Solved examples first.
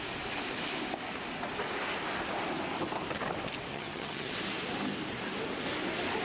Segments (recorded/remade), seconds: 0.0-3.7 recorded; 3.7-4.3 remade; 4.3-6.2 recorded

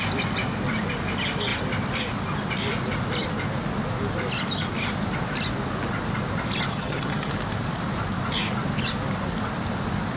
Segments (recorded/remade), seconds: 0.0-6.7 recorded; 6.7-7.3 remade; 7.3-10.2 recorded

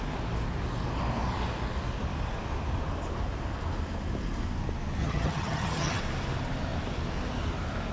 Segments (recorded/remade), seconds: 0.0-5.0 recorded; 5.0-6.0 remade; 6.0-7.9 recorded

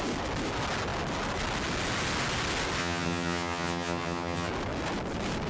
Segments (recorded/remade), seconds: 0.0-2.8 recorded; 2.8-4.5 remade; 4.5-5.5 recorded

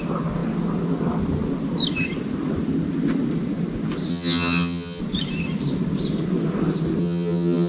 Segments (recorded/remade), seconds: 0.0-4.1 recorded; 4.1-5.0 remade; 5.0-7.0 recorded; 7.0-7.7 remade